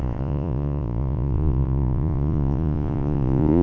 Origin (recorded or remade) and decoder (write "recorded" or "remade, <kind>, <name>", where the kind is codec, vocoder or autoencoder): remade, vocoder, Vocos